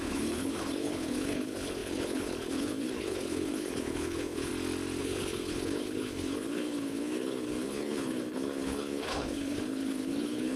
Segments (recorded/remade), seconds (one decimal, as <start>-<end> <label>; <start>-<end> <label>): 0.0-4.5 remade; 4.5-5.0 recorded; 5.0-10.6 remade